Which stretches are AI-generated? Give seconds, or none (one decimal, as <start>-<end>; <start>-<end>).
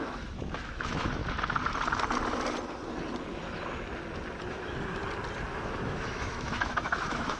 0.0-1.2; 4.5-5.0; 5.5-7.4